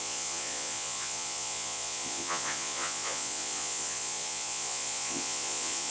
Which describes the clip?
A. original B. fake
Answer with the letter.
B